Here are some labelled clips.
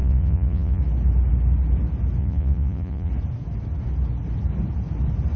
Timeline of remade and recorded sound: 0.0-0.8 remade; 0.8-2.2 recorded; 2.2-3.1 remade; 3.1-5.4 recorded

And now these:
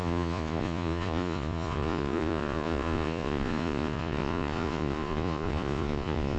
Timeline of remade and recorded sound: 0.0-6.4 remade

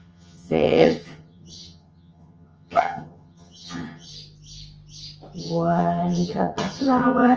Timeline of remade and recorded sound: 0.0-4.1 remade; 4.1-5.4 recorded; 5.4-7.4 remade

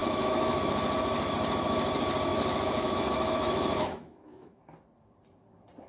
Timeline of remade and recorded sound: 0.0-0.7 remade; 0.7-2.3 recorded; 2.3-4.6 remade; 4.6-5.9 recorded

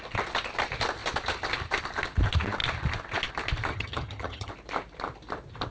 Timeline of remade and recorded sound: 0.0-3.7 recorded; 3.7-4.5 remade; 4.5-5.7 recorded

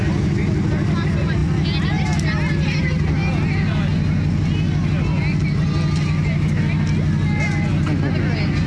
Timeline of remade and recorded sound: 0.0-8.7 recorded